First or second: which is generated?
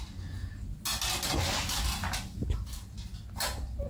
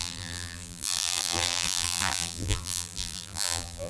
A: second